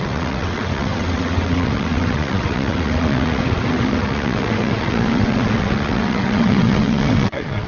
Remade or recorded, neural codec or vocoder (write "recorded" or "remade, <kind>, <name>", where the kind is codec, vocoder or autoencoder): remade, vocoder, WaveNeXt